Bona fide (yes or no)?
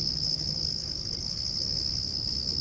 no